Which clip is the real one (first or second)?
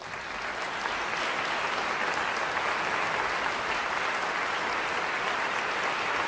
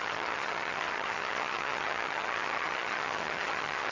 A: first